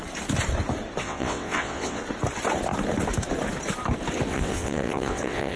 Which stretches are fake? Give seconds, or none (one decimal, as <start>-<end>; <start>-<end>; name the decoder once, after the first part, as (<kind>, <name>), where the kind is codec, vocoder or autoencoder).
1.0-2.0 (vocoder, WaveNeXt); 4.3-5.6